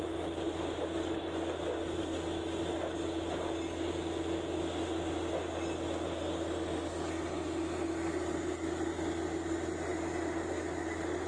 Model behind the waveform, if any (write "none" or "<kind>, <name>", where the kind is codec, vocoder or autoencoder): none